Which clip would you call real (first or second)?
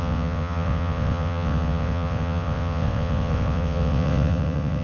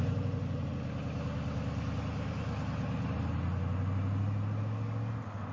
second